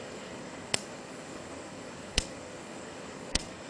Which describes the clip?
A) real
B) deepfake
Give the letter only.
B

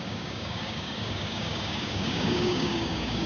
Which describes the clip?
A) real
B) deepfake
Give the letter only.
B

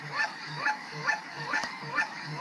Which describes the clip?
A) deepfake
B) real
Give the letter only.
A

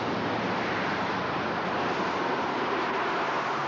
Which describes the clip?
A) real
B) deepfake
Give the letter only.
A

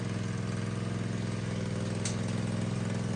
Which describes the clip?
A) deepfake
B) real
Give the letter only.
B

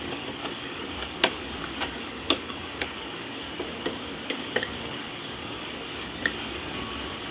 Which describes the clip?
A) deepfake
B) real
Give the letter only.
A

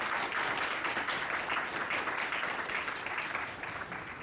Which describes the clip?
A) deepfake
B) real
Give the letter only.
B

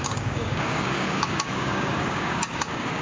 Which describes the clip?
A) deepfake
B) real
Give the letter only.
A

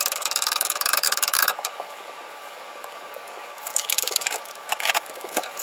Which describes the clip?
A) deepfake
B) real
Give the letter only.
A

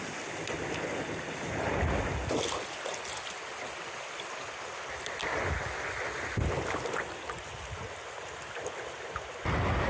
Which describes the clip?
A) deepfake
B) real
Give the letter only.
B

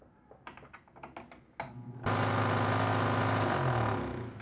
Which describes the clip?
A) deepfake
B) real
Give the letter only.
B